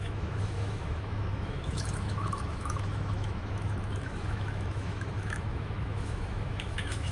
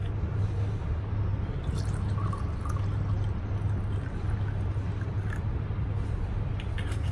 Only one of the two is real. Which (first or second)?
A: second